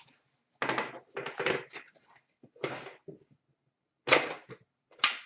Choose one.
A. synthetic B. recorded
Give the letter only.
B